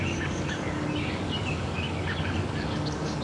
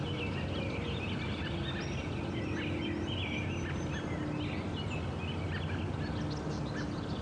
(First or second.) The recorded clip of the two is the second